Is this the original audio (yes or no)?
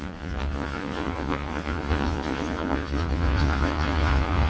no